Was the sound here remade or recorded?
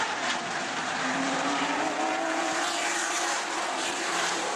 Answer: remade